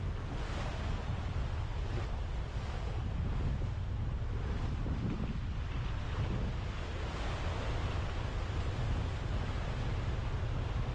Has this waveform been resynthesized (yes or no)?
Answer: no